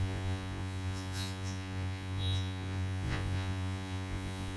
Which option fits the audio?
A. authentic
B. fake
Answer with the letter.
B